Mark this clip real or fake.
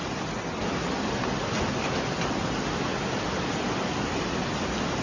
real